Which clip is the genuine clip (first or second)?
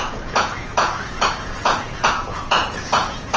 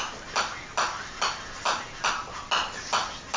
second